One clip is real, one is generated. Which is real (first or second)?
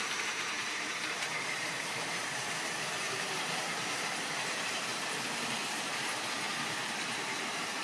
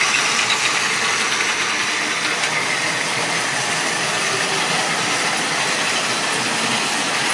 second